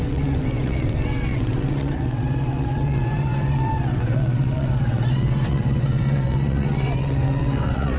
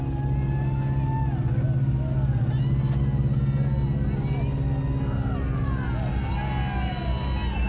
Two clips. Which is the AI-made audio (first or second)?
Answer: first